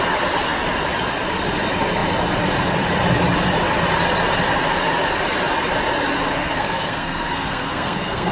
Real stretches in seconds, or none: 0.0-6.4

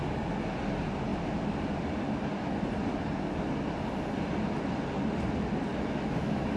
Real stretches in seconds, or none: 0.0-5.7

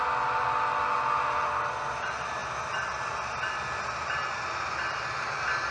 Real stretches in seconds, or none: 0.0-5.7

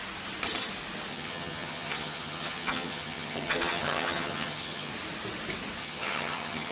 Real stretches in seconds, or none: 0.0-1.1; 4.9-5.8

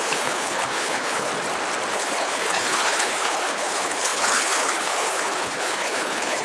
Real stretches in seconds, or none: 1.3-1.9

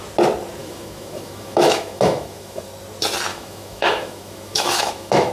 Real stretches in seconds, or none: 0.0-0.6; 2.7-3.3